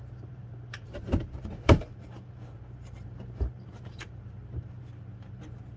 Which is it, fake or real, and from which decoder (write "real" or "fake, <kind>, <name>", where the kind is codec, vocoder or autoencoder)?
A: fake, vocoder, BigVGAN v2